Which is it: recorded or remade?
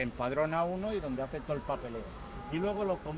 remade